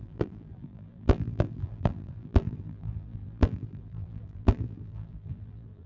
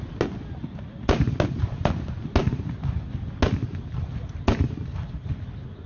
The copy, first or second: first